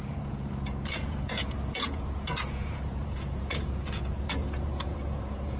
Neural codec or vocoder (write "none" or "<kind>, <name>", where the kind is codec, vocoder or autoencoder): vocoder, Vocos